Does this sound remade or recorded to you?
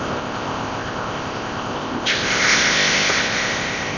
remade